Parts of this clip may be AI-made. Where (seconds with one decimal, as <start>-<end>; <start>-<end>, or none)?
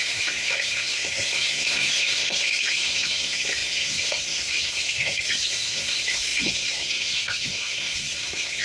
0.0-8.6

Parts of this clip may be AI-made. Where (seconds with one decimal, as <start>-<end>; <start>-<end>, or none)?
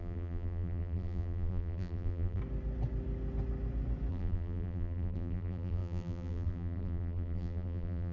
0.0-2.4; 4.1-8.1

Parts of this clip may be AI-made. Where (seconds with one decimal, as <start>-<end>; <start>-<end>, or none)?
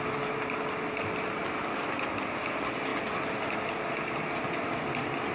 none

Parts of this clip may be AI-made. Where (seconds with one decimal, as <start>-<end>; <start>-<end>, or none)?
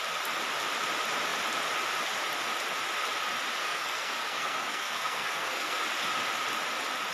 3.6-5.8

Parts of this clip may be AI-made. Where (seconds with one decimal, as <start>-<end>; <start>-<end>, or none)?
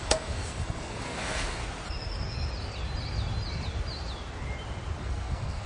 0.0-1.6; 5.0-5.7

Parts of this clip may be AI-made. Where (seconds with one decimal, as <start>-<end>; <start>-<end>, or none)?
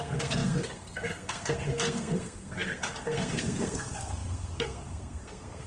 0.0-5.7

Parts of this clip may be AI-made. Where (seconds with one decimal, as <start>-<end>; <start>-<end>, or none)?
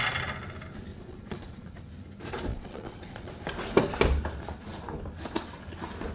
0.9-1.8; 2.5-3.3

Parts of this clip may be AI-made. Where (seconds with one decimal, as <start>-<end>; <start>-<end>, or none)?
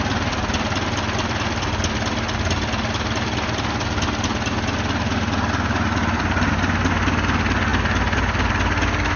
6.0-6.5